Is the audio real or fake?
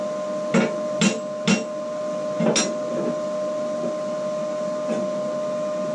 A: real